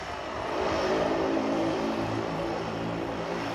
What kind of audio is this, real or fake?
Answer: fake